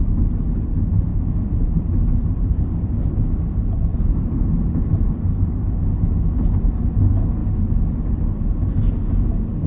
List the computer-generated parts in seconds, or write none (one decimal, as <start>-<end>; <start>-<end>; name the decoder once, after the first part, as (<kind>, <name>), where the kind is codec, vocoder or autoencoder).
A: 1.1-2.6 (vocoder, BigVGAN v2); 3.9-5.5